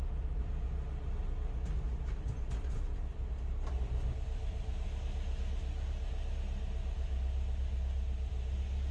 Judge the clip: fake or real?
real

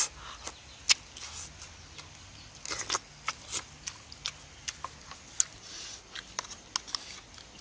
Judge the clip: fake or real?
real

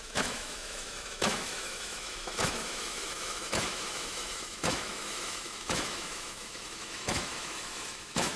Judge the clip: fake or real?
fake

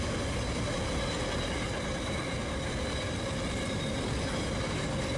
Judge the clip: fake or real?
real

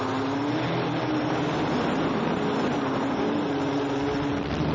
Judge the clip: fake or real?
real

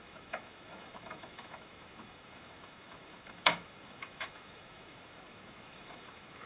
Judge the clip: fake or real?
fake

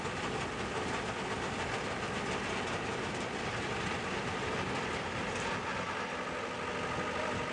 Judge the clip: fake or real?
real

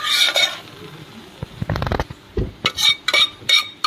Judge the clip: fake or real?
real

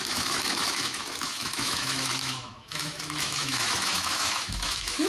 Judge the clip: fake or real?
fake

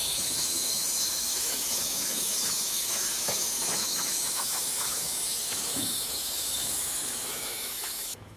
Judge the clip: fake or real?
fake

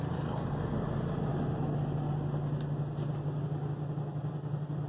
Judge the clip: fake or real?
real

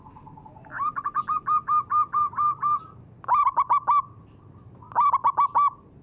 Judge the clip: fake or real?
real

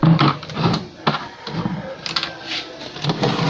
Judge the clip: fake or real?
real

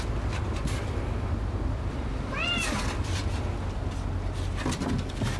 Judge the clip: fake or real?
real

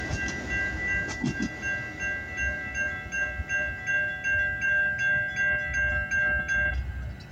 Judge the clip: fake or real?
real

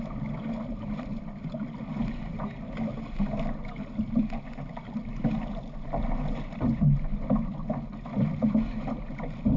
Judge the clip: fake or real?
real